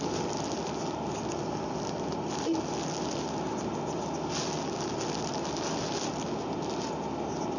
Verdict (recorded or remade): recorded